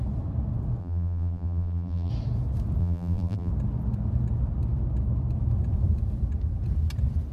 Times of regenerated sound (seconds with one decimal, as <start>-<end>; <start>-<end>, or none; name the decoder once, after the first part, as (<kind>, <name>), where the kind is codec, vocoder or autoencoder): 0.8-2.1 (vocoder, BigVGAN v2); 2.8-3.5